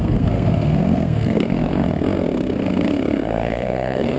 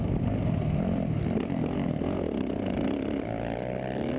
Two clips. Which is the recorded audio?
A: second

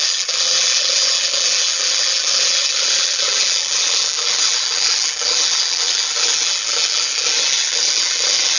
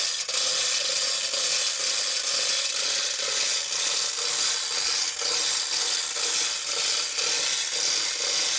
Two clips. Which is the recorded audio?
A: second